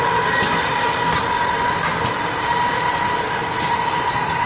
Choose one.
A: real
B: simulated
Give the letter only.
A